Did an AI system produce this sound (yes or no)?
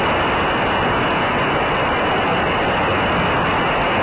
no